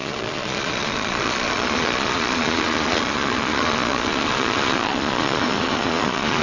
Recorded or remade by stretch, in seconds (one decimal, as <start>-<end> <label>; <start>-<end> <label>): 0.0-6.4 remade